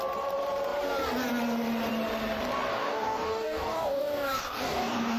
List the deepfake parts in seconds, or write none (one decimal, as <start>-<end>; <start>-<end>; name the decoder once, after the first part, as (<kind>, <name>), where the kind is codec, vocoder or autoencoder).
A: 2.7-5.2 (codec, DAC)